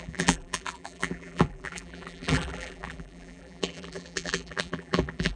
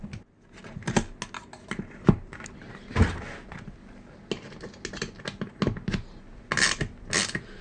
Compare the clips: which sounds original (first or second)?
second